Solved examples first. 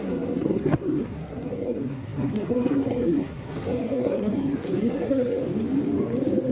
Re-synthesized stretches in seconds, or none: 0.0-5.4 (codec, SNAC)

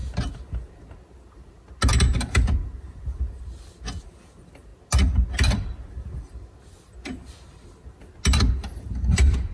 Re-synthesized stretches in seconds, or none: none